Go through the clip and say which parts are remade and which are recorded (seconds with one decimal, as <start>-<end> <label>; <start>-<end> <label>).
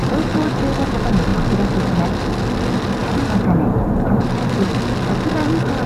0.0-0.6 remade; 0.6-3.0 recorded; 3.0-4.7 remade; 4.7-5.9 recorded